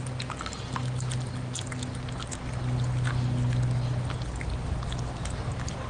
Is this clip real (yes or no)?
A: yes